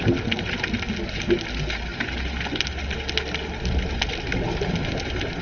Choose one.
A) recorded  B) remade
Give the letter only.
A